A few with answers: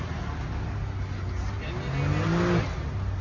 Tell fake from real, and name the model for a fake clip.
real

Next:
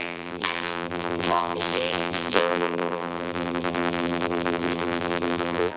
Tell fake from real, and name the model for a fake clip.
fake, vocoder, BigVGAN v2